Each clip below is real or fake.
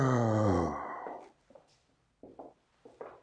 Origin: real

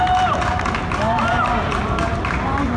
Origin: real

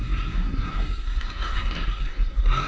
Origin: fake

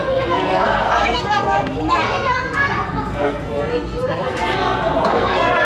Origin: fake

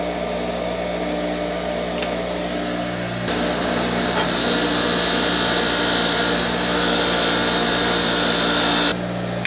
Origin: real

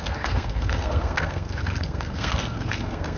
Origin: fake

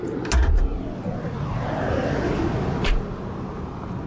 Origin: real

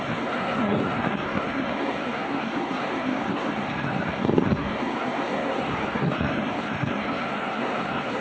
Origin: fake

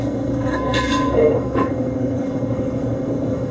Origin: fake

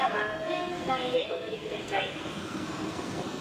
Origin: fake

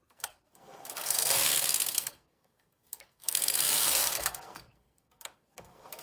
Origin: fake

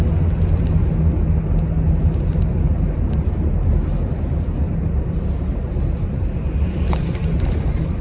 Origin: real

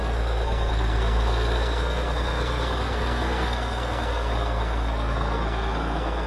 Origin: fake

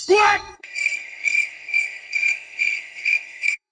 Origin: fake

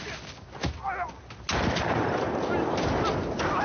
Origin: real